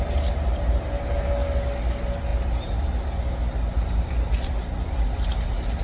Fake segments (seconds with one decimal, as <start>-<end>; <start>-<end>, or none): none